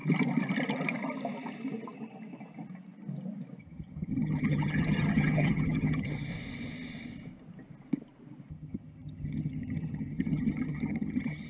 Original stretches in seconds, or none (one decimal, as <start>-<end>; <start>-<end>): 0.0-3.6; 6.3-8.5